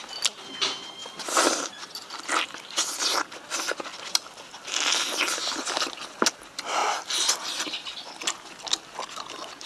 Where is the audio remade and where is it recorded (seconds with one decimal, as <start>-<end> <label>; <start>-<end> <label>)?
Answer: 0.0-1.0 recorded; 1.0-3.0 remade; 3.0-6.8 recorded; 6.8-8.2 remade; 8.2-9.7 recorded